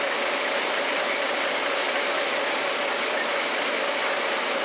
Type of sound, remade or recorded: recorded